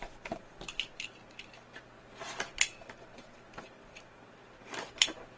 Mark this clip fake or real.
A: fake